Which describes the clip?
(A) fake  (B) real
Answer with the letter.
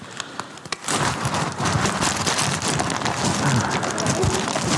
B